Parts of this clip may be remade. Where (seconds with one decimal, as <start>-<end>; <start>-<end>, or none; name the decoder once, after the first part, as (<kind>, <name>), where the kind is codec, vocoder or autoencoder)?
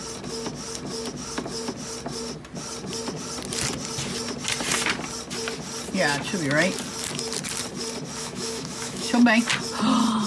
8.2-9.3 (autoencoder, DAC-VAE)